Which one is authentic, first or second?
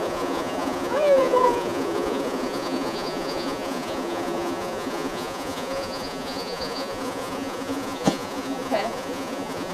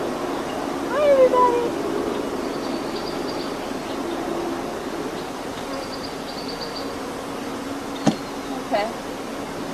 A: second